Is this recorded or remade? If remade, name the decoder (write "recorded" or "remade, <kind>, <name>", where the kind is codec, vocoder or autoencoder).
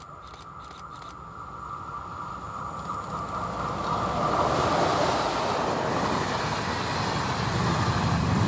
recorded